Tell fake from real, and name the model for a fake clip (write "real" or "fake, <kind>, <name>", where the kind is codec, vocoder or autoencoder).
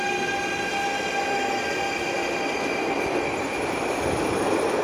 real